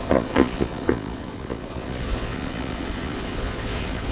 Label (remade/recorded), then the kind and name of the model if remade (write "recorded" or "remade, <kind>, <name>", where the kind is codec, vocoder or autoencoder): remade, vocoder, Vocos